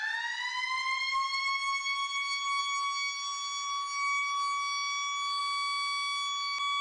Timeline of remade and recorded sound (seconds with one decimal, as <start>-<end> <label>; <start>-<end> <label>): 0.0-6.8 recorded